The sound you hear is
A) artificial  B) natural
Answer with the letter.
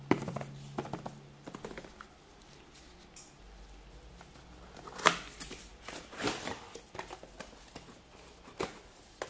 B